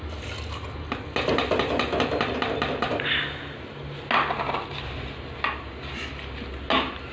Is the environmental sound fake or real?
real